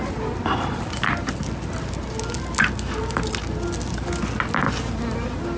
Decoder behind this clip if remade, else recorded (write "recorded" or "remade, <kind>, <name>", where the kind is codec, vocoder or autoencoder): recorded